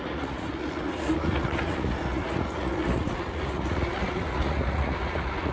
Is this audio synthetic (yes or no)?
yes